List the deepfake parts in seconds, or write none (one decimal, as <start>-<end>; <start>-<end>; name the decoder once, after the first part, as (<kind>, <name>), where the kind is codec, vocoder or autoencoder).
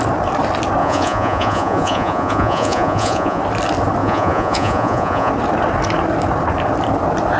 0.8-3.4 (vocoder, Vocos); 4.0-5.3